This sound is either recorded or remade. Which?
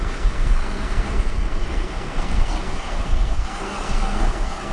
remade